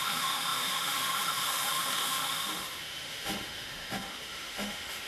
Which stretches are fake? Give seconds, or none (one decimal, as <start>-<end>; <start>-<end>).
0.0-5.1